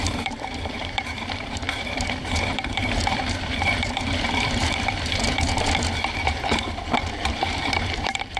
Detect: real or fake fake